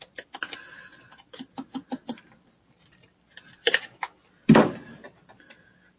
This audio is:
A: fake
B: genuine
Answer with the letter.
B